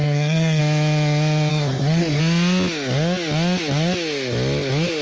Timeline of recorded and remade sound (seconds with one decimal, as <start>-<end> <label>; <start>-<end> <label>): 0.0-0.6 remade; 0.6-1.5 recorded; 1.5-2.2 remade; 2.2-5.0 recorded